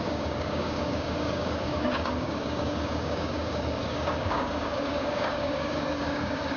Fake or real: fake